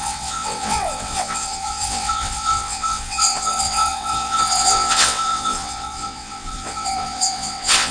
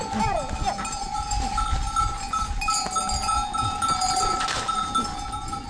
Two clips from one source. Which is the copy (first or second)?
first